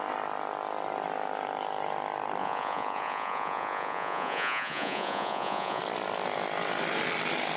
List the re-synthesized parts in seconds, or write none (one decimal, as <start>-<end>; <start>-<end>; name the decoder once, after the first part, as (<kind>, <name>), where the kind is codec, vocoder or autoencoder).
2.4-5.8 (vocoder, Vocos)